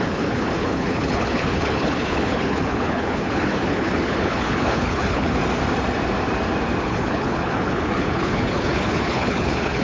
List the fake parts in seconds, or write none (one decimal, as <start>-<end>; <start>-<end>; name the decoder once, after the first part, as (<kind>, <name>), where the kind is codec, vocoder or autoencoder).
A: 0.0-5.4 (codec, HILCodec); 6.8-9.8